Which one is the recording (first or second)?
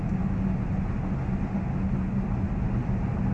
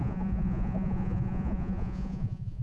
first